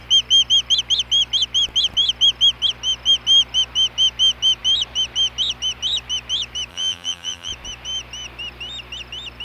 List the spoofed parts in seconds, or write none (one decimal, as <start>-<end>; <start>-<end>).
6.7-7.5